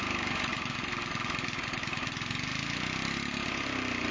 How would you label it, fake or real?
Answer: real